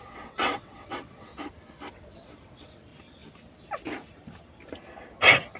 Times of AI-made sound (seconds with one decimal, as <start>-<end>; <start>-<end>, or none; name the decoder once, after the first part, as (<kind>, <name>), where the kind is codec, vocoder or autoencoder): 0.0-1.3 (vocoder, WaveNeXt); 1.9-2.9